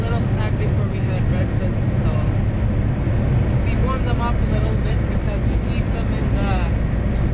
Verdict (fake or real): real